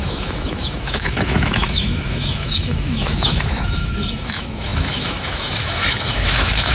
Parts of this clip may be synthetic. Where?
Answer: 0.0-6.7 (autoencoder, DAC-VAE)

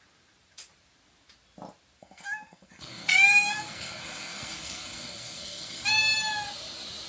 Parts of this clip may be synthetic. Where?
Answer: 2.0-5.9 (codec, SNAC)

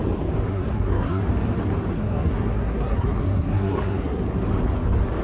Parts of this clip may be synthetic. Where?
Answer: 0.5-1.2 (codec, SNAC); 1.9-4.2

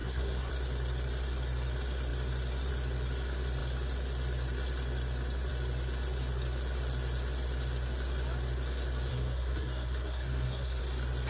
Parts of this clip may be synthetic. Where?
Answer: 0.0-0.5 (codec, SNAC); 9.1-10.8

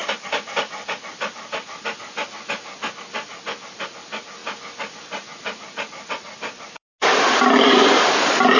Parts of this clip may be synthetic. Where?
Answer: none